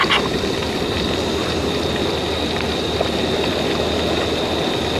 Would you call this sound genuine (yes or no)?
yes